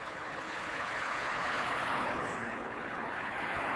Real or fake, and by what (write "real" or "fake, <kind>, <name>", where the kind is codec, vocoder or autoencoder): fake, codec, HILCodec